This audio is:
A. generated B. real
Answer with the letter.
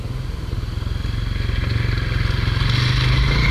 B